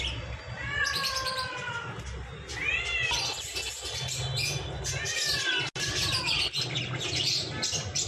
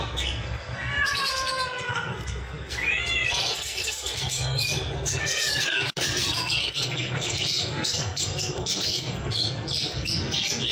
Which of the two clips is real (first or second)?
first